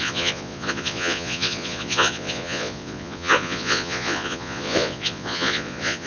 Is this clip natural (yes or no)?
no